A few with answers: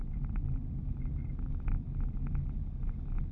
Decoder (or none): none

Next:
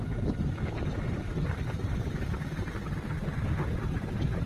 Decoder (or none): none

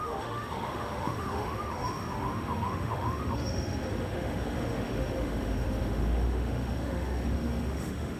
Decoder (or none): autoencoder, DAC-VAE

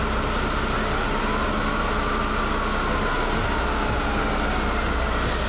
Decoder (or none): none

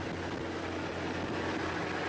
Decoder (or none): none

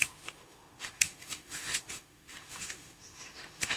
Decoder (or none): autoencoder, DAC-VAE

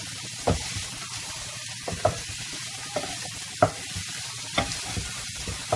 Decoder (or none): none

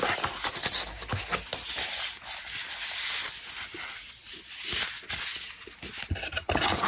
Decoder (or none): none